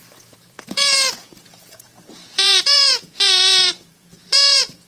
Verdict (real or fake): fake